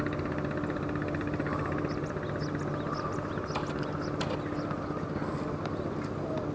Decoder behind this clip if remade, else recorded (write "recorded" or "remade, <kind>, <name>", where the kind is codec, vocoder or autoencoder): recorded